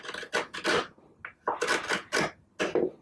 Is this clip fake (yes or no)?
no